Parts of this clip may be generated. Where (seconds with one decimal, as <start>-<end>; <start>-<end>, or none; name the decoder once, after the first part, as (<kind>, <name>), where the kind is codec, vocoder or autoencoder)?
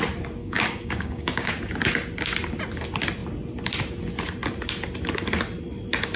0.4-1.5 (codec, DAC)